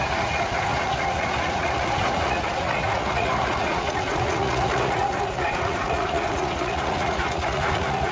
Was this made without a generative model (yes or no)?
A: no